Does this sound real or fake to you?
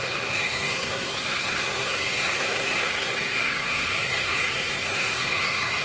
fake